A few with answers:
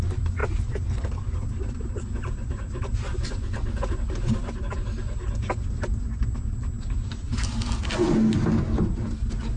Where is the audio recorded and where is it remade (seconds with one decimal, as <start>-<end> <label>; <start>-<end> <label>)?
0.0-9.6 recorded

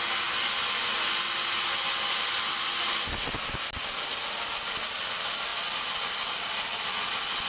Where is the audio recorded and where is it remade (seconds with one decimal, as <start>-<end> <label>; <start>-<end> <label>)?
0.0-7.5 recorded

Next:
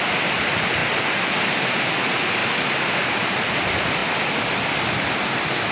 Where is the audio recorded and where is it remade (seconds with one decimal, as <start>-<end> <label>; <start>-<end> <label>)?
0.0-0.8 recorded; 0.8-1.5 remade; 1.5-2.4 recorded; 2.4-3.4 remade; 3.4-5.7 recorded

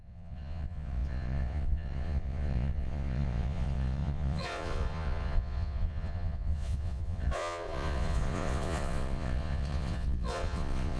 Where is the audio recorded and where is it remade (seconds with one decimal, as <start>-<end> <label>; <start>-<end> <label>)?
0.0-11.0 remade